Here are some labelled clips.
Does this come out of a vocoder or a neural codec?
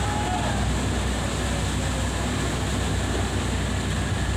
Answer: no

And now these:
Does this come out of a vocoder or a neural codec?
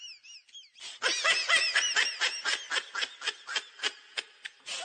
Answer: no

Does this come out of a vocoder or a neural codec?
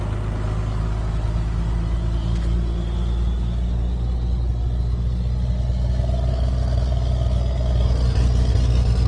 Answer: no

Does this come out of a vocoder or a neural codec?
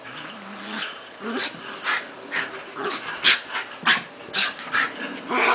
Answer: no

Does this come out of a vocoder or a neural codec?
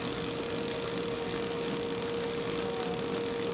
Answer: no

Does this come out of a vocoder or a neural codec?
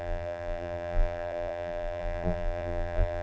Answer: yes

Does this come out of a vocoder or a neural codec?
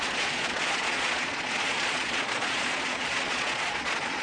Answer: yes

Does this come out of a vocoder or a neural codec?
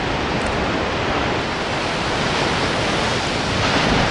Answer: no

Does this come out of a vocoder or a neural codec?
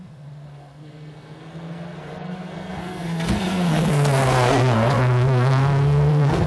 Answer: yes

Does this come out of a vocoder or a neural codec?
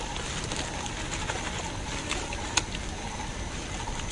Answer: no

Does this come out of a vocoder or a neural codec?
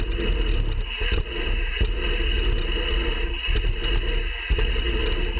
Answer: no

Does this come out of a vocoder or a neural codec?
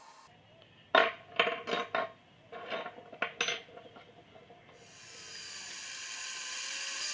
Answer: no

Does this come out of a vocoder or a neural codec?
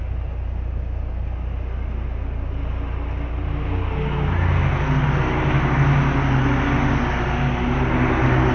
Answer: no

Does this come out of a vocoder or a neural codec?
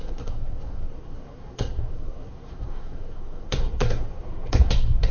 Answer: yes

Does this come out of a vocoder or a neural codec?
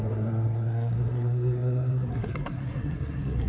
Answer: yes